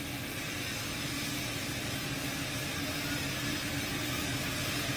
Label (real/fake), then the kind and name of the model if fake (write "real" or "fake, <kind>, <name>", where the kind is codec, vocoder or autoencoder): real